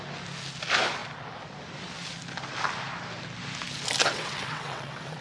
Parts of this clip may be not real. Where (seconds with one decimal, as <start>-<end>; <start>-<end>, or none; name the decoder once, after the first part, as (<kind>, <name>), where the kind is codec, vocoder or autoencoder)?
4.0-5.2 (vocoder, WaveNeXt)

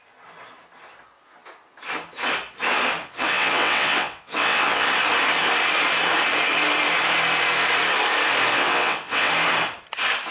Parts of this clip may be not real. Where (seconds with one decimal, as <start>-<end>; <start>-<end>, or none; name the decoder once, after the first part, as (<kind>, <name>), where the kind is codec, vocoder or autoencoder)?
3.0-4.9 (vocoder, WaveNeXt); 8.5-9.3

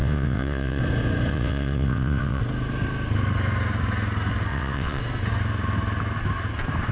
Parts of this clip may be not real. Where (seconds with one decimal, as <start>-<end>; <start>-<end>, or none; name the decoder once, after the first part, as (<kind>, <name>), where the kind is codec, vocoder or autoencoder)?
0.0-0.8 (vocoder, WaveNeXt); 1.3-2.4; 4.5-5.0

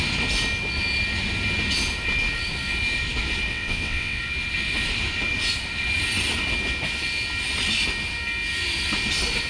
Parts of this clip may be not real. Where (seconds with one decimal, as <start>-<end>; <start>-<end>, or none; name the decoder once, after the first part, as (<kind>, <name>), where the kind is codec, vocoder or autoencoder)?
3.5-4.2 (vocoder, WaveNeXt)